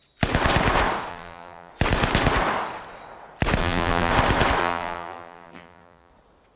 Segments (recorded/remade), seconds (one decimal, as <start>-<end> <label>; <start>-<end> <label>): 0.0-1.1 recorded; 1.1-1.7 remade; 1.7-3.6 recorded; 3.6-4.1 remade; 4.1-4.6 recorded; 4.6-6.1 remade; 6.1-6.6 recorded

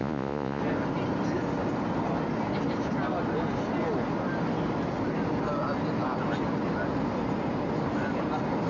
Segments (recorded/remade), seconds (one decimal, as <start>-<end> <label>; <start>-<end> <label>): 0.0-0.6 remade; 0.6-8.7 recorded

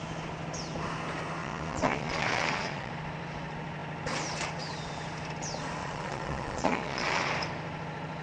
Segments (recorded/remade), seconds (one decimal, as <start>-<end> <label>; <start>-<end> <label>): 0.0-1.4 recorded; 1.4-2.9 remade; 2.9-5.8 recorded; 5.8-7.3 remade; 7.3-8.2 recorded

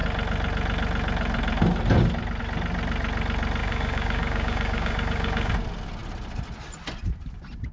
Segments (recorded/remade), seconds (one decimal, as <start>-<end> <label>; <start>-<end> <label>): 0.0-3.6 recorded; 3.6-5.5 remade; 5.5-7.7 recorded